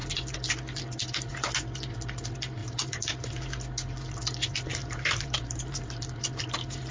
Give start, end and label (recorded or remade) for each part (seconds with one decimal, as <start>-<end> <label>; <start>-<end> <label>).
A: 0.0-2.6 recorded; 2.6-3.4 remade; 3.4-4.7 recorded; 4.7-6.2 remade; 6.2-6.9 recorded

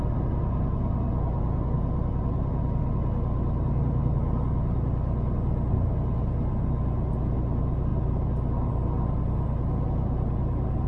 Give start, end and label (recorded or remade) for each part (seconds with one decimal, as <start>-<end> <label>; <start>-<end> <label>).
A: 0.0-10.9 recorded

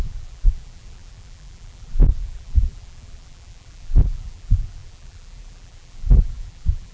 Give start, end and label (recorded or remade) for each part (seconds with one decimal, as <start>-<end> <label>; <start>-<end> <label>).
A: 0.0-6.9 remade

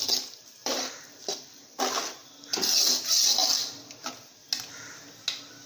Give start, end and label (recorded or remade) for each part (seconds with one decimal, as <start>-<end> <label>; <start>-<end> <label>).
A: 0.0-0.6 recorded; 0.6-1.8 remade; 1.8-2.2 recorded; 2.2-2.7 remade; 2.7-3.4 recorded; 3.4-4.1 remade; 4.1-5.7 recorded

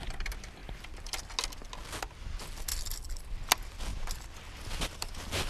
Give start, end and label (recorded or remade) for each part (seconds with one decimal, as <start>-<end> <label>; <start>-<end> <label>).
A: 0.0-0.6 recorded; 0.6-1.2 remade; 1.2-3.9 recorded; 3.9-4.4 remade; 4.4-5.5 recorded

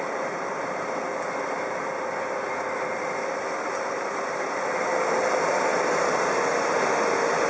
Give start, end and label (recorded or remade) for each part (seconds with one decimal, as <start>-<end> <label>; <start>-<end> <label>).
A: 0.0-5.7 recorded; 5.7-6.8 remade; 6.8-7.5 recorded

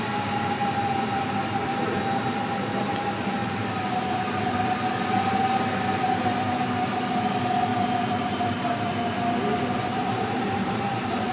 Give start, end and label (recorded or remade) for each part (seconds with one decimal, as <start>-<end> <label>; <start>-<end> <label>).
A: 0.0-9.5 recorded; 9.5-10.8 remade; 10.8-11.3 recorded